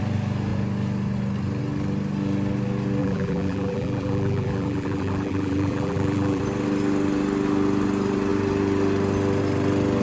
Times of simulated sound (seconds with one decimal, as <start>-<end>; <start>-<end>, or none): 3.0-6.4